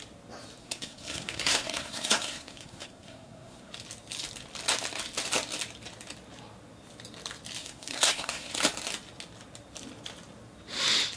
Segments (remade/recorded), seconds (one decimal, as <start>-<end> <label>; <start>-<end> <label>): 0.0-0.6 recorded; 0.6-3.7 remade; 3.7-7.6 recorded; 7.6-8.5 remade; 8.5-11.2 recorded